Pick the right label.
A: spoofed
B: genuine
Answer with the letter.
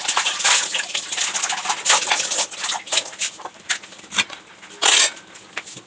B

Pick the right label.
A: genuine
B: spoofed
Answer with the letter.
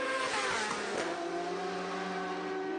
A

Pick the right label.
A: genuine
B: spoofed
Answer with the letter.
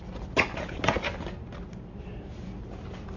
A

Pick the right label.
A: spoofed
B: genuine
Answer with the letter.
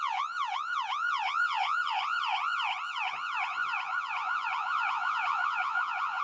A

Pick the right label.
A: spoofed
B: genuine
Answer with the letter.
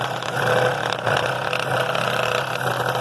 B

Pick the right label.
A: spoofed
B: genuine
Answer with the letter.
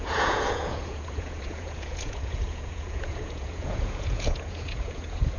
A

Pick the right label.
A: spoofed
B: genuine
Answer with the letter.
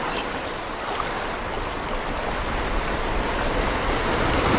B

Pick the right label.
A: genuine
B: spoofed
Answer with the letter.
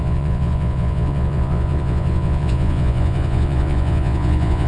B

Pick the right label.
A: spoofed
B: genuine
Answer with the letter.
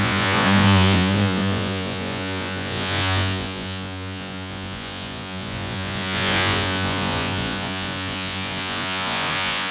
A